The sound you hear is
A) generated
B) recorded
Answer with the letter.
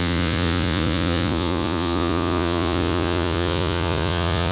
A